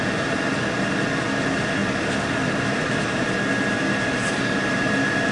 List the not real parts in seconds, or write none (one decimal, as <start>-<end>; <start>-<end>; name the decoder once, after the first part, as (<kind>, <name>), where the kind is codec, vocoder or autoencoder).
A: 0.0-5.3 (vocoder, BigVGAN v2)